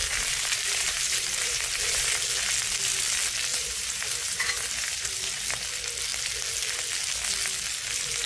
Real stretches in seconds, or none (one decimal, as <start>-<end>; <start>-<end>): 2.1-3.5; 5.4-8.3